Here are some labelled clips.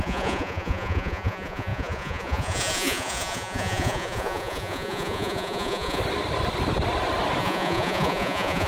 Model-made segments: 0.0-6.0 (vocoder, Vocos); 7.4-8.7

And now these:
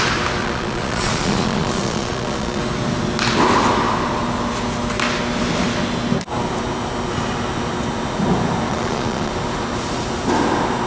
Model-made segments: 0.4-2.6 (vocoder, Vocos); 8.7-9.3

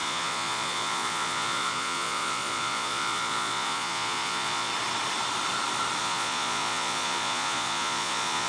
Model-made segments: 0.0-4.7 (vocoder, Vocos); 6.0-8.5

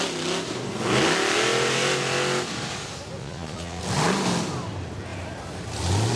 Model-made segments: 3.2-3.8 (vocoder, Vocos)

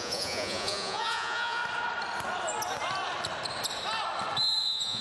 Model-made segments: 0.0-1.6 (vocoder, Vocos); 4.6-5.0

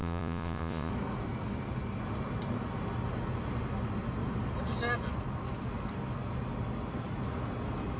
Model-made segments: 0.0-0.9 (vocoder, Vocos)

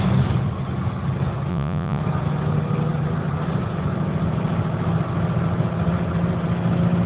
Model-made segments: 1.5-2.0 (vocoder, Vocos)